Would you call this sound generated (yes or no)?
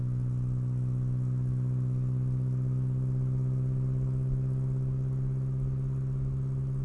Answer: no